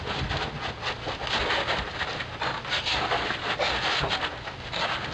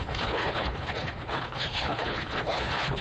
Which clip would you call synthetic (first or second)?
second